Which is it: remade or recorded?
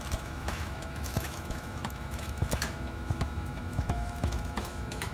remade